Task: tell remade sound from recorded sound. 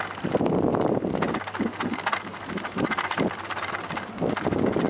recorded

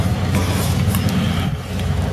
recorded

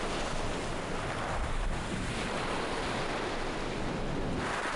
recorded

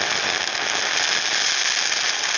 recorded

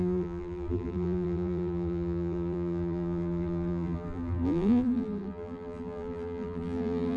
remade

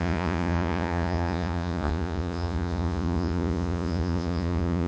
remade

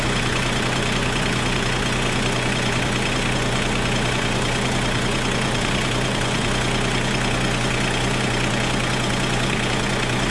remade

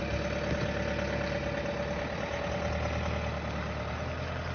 recorded